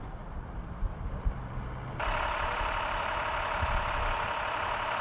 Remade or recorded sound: remade